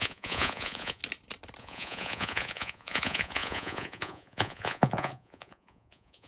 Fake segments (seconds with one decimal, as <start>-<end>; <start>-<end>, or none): 0.0-1.0; 1.6-6.3